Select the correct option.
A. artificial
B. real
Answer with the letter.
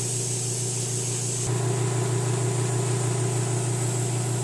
B